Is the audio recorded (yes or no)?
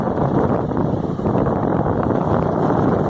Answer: yes